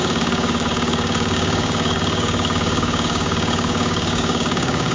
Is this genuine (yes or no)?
no